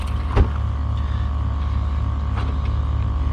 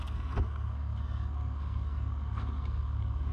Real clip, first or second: first